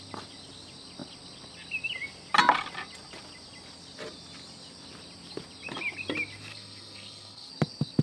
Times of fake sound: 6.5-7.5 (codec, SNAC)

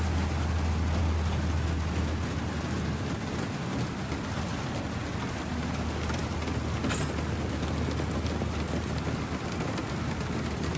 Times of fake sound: none

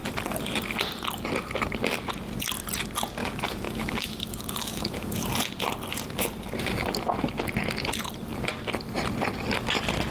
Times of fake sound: 3.2-5.3 (autoencoder, DAC-VAE)

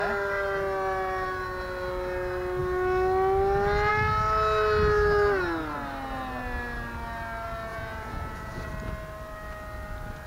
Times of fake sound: 7.7-8.7 (vocoder, Vocos)

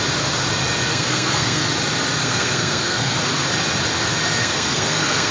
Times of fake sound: 0.9-1.6 (codec, SNAC); 2.2-3.2; 4.4-5.3